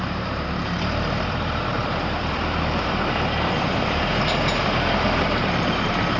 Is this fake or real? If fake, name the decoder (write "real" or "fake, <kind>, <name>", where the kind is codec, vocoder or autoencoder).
fake, vocoder, BigVGAN v2